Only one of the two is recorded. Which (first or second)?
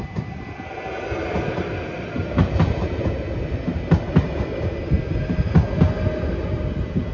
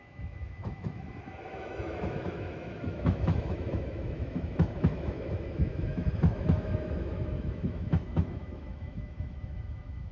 first